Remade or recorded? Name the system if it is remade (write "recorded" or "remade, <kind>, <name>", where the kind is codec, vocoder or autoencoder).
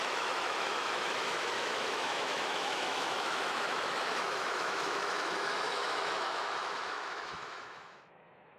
remade, autoencoder, DAC-VAE